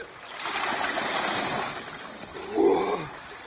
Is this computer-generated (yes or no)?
no